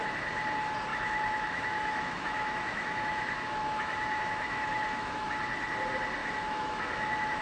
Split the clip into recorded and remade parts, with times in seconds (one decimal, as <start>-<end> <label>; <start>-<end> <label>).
0.0-0.9 recorded; 0.9-5.3 remade; 5.3-6.2 recorded; 6.2-7.4 remade